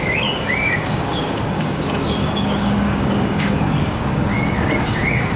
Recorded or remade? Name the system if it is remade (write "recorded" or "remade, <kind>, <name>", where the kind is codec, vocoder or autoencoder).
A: remade, codec, DAC